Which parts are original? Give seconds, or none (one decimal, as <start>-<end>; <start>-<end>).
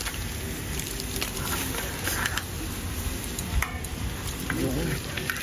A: none